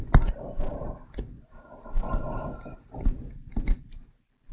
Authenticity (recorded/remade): recorded